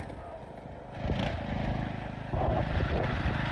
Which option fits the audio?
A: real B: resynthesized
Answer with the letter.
A